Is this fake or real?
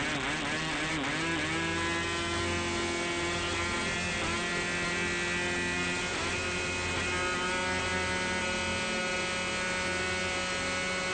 real